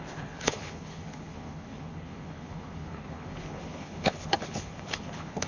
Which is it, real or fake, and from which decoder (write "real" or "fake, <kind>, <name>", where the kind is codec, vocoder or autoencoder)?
fake, codec, HILCodec